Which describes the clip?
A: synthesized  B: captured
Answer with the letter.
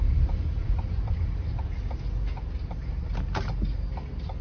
B